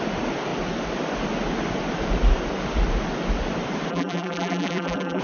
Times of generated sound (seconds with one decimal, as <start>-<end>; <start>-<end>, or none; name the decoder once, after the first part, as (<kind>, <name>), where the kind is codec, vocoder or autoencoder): 3.9-5.2 (vocoder, BigVGAN v2)

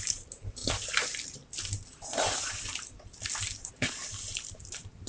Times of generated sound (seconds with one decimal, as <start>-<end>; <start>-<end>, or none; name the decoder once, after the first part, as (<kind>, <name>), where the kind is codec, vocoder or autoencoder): 0.0-0.6 (vocoder, BigVGAN v2); 3.7-5.1

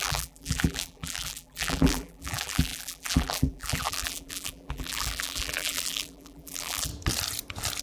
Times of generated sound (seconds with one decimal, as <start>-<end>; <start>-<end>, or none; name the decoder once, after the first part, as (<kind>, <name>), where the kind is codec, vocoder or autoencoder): 0.0-6.9 (vocoder, BigVGAN v2)

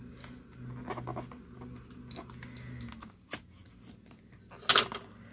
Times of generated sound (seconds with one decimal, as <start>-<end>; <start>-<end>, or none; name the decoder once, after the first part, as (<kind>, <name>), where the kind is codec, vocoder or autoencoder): none

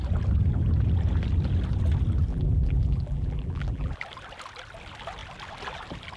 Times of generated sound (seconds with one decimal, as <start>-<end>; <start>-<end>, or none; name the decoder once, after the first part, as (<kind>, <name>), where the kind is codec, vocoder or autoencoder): 2.3-3.9 (vocoder, BigVGAN v2)

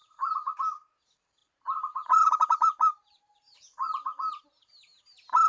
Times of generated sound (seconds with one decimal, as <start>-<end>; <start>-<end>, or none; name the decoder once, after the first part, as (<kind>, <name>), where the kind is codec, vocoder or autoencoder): 0.0-0.9 (vocoder, BigVGAN v2); 1.4-4.4

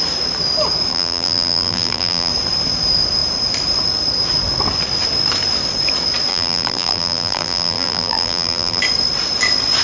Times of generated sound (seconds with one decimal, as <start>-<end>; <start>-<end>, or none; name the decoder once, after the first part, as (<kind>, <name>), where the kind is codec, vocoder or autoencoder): 0.9-2.3 (vocoder, BigVGAN v2); 6.3-8.8

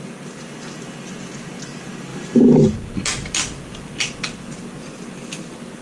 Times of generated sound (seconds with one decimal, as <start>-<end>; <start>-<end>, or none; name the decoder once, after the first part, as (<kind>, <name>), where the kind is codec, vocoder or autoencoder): 2.1-2.7 (vocoder, BigVGAN v2)